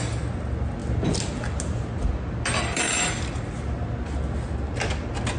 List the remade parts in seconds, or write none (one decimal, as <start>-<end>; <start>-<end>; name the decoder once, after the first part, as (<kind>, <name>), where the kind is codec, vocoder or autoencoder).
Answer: none